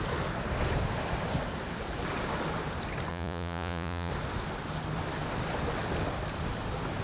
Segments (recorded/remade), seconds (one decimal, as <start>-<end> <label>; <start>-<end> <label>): 0.0-3.1 recorded; 3.1-4.1 remade; 4.1-7.0 recorded